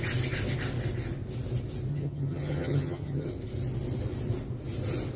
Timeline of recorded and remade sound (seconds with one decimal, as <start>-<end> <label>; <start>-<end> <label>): 0.0-1.9 recorded; 1.9-3.3 remade; 3.3-5.2 recorded